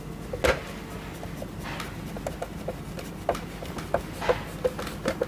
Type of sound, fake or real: real